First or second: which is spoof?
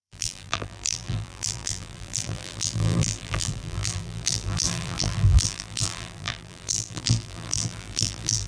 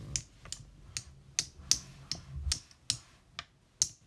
first